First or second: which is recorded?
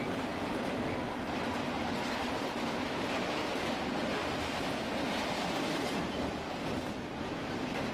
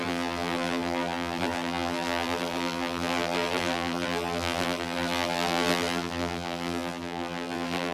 first